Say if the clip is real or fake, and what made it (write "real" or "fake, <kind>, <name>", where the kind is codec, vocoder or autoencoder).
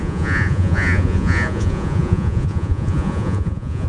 fake, vocoder, Vocos